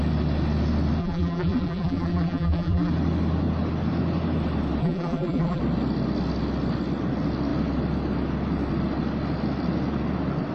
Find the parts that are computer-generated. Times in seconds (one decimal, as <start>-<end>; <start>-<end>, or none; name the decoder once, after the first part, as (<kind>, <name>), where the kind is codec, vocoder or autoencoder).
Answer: 1.0-2.9 (vocoder, BigVGAN v2); 4.8-5.6